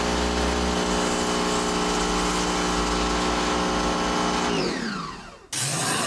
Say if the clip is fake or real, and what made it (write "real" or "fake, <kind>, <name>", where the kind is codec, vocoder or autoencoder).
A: real